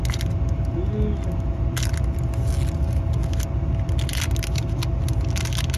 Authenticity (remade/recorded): recorded